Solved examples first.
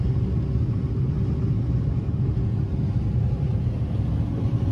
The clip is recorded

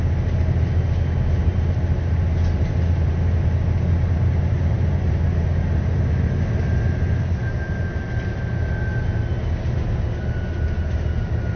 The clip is recorded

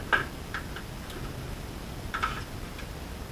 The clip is recorded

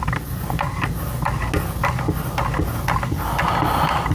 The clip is recorded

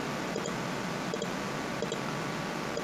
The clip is recorded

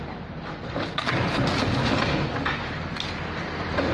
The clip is recorded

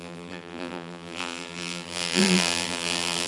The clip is remade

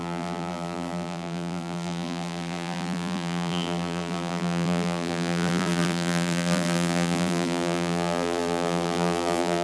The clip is remade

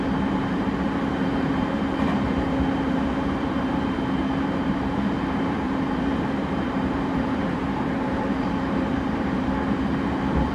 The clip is remade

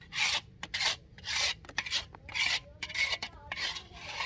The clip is remade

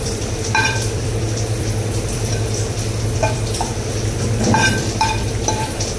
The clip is remade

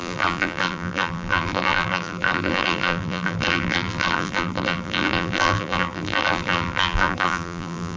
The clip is remade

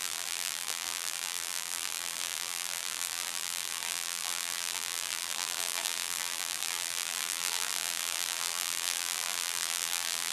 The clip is remade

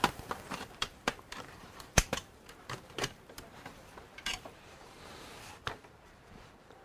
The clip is remade